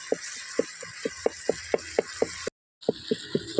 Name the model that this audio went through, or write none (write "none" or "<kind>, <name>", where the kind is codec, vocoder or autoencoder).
none